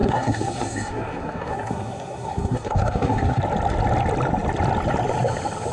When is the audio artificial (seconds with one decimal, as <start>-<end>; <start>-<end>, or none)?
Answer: 0.0-3.4